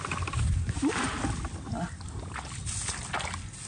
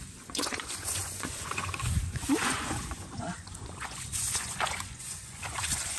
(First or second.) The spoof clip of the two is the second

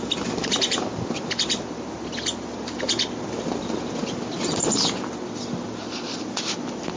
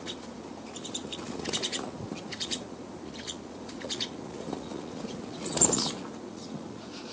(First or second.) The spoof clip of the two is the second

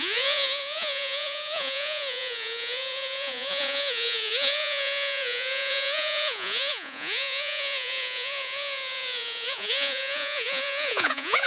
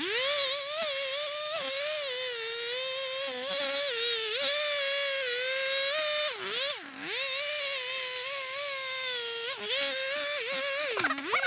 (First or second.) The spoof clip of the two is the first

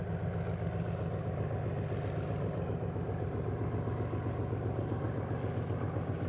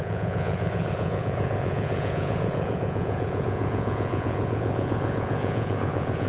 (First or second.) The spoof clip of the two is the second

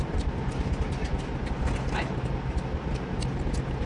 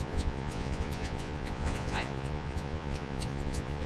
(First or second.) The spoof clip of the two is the second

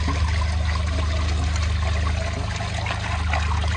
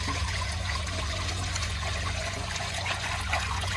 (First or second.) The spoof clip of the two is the second